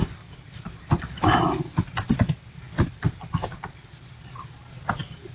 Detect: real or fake real